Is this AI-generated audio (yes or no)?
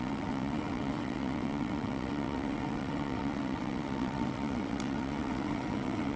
yes